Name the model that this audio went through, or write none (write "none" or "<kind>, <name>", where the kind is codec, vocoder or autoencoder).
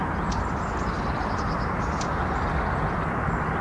none